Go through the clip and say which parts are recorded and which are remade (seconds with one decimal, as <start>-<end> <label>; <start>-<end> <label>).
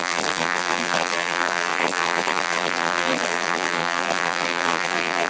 0.0-5.3 remade